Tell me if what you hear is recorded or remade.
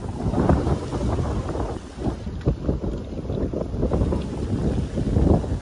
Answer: recorded